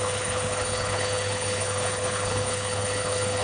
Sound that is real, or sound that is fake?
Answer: fake